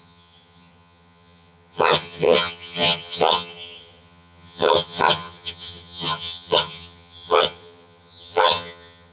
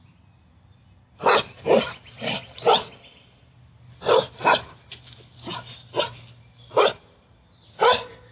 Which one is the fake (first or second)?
first